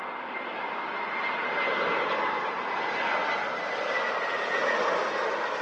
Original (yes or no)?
yes